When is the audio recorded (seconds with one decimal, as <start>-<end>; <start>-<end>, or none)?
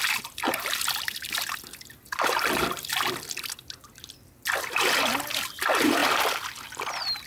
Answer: 0.0-7.3